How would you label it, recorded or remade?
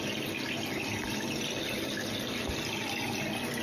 recorded